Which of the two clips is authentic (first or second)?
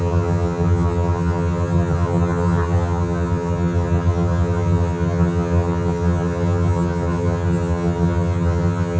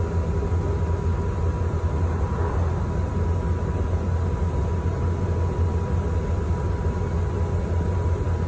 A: second